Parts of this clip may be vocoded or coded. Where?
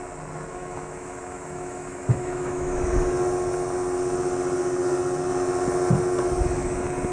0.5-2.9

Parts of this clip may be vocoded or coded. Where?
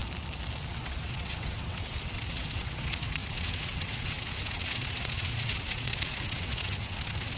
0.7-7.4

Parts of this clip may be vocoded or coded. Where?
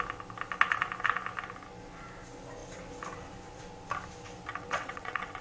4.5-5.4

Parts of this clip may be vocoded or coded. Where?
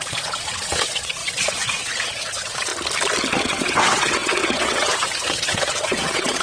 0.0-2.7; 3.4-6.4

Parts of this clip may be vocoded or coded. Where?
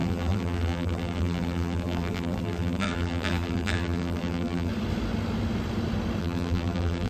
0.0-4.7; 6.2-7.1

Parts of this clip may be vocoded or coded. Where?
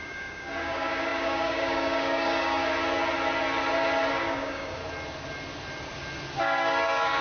0.0-2.6; 4.1-4.8; 6.4-7.2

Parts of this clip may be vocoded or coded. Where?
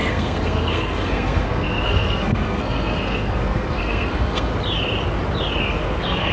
0.0-4.5; 5.6-6.3